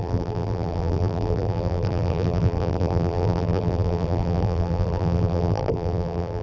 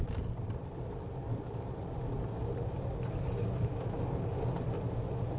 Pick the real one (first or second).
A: second